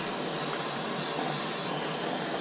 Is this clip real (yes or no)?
yes